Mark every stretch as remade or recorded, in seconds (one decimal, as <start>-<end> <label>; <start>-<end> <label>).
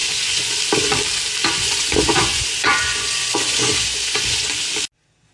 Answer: 0.0-0.6 remade; 0.6-1.4 recorded; 1.4-4.6 remade; 4.6-5.3 recorded